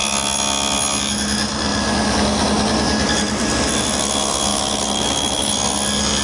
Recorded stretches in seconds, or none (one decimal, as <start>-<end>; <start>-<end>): 0.0-4.5; 5.5-6.2